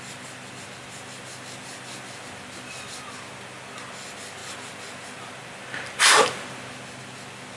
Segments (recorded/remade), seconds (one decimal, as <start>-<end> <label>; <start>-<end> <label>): 0.0-7.6 recorded